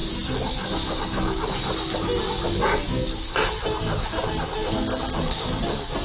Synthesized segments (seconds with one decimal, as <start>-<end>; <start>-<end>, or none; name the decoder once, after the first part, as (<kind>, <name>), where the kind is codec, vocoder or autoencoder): none